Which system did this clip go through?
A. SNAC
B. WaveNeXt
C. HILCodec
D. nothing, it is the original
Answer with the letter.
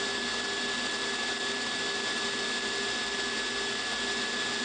D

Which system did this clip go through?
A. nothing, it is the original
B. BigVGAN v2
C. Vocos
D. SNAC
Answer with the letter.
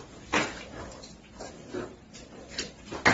A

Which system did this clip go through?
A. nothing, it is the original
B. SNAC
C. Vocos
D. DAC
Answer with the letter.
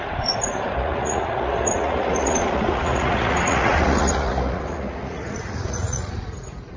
C